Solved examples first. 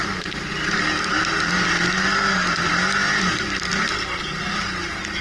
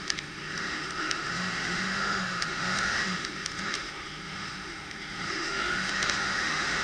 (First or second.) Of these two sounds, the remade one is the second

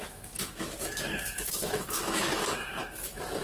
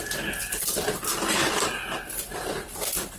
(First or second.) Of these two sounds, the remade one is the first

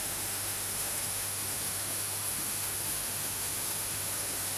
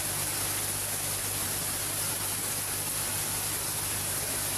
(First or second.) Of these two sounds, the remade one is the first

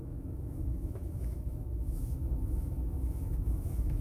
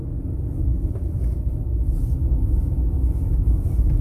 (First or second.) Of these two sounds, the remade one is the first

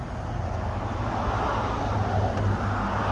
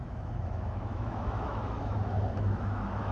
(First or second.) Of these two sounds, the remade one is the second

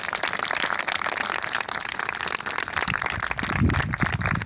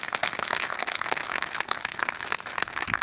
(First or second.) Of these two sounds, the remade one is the second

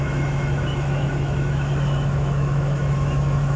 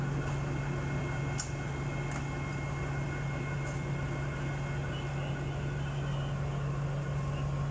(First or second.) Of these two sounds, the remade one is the first